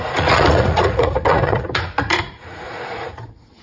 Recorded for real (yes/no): no